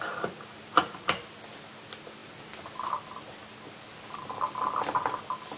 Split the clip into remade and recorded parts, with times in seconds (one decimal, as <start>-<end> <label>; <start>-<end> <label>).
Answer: 0.0-5.6 recorded